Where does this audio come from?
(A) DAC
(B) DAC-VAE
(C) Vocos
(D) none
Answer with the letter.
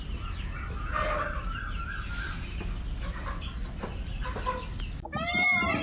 D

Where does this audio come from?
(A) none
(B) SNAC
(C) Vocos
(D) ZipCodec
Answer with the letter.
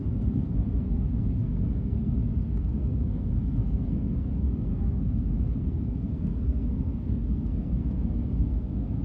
B